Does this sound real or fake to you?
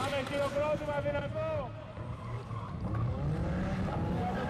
real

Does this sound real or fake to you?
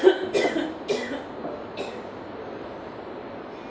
real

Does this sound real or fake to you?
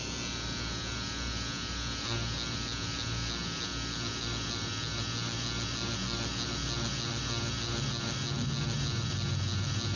real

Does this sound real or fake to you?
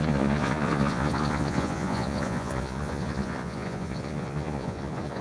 fake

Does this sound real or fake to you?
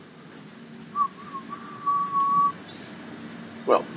real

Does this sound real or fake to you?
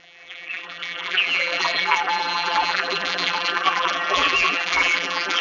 fake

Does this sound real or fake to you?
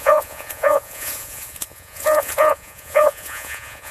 fake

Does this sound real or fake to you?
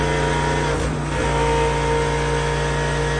real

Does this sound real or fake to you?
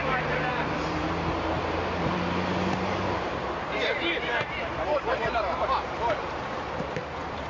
fake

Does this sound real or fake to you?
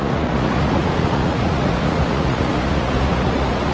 fake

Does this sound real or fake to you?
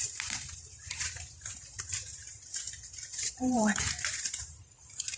fake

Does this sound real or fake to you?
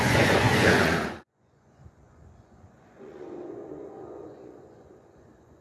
fake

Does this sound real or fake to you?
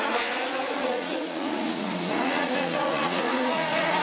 fake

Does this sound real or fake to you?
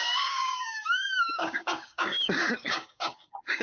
fake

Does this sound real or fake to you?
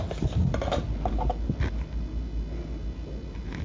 real